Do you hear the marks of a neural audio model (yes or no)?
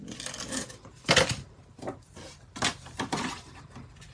no